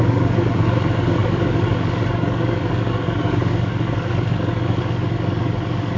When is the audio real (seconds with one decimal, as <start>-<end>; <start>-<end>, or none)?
none